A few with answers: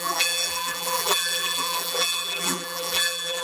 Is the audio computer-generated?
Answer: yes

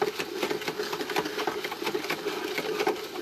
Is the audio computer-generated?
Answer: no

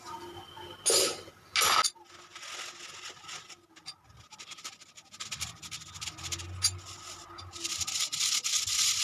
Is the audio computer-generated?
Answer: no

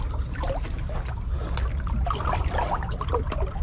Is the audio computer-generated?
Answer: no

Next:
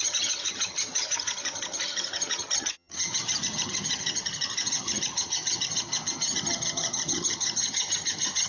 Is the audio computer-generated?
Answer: yes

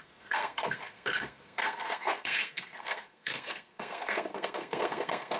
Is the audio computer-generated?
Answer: yes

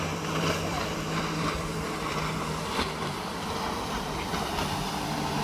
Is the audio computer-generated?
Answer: yes